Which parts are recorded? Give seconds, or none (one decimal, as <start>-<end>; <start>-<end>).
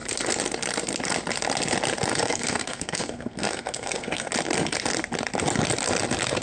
0.0-2.1; 4.3-6.4